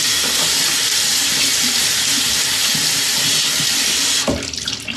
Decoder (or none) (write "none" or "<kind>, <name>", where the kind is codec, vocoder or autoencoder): none